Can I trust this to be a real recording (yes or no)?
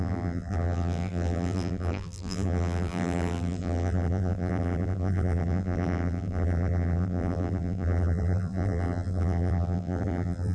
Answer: no